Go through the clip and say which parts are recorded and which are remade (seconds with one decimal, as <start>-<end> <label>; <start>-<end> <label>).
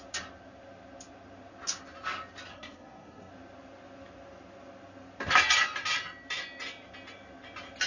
0.0-2.5 recorded; 2.5-3.3 remade; 3.3-7.9 recorded